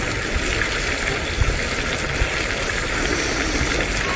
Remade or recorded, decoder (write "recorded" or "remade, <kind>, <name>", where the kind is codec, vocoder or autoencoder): recorded